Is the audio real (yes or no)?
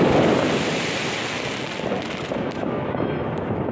yes